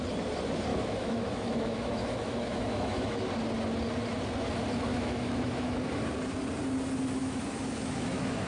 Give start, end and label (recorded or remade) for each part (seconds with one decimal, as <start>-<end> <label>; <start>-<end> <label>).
0.0-0.7 recorded; 0.7-3.3 remade; 3.3-4.9 recorded; 4.9-5.8 remade; 5.8-7.2 recorded; 7.2-8.5 remade